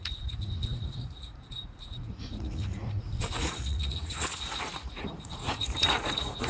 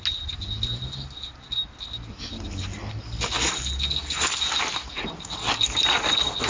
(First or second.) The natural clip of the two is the second